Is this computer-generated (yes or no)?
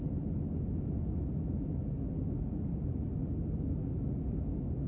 no